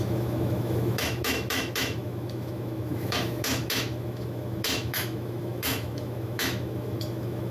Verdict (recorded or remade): remade